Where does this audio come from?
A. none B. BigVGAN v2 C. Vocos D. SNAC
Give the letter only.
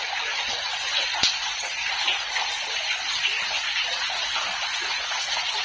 C